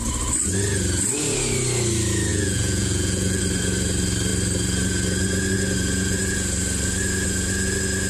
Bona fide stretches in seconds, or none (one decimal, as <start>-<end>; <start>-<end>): 0.0-2.3; 3.4-8.1